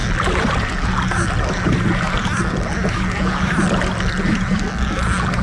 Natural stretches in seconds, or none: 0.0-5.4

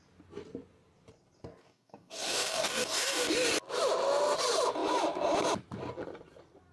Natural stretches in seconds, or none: 0.0-1.6; 3.3-6.7

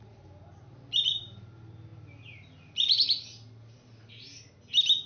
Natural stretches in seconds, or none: 0.0-5.1

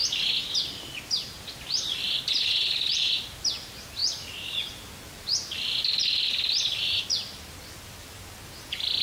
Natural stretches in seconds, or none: 0.0-9.0